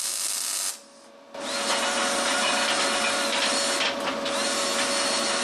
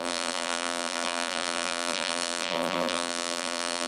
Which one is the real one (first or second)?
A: first